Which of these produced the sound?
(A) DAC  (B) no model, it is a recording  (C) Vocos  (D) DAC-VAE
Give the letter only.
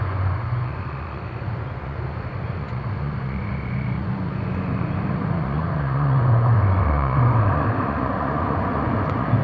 C